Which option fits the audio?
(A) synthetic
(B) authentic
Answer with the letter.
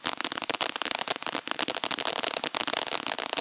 B